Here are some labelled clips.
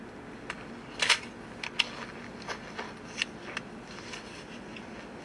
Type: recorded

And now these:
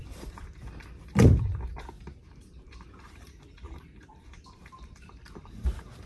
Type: remade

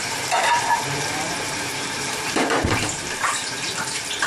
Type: remade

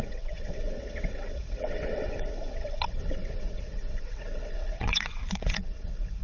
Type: remade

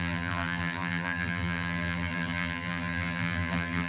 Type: remade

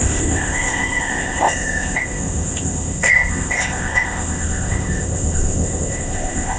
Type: remade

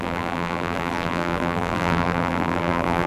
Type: remade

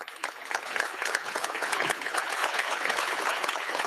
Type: remade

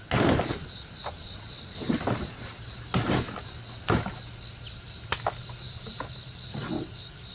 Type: recorded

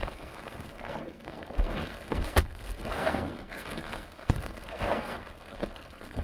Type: remade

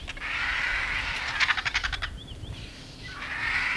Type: recorded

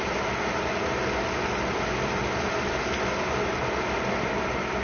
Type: recorded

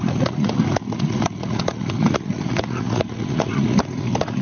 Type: remade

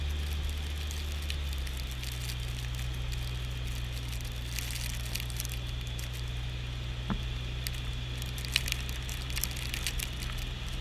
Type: recorded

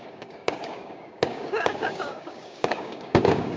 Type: remade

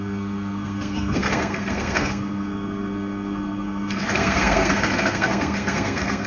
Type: remade